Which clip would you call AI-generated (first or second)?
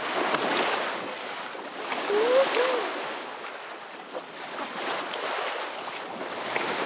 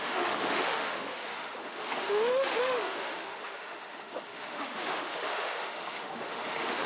second